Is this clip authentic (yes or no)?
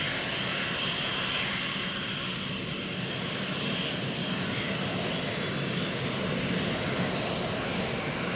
yes